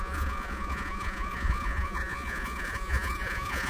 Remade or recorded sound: remade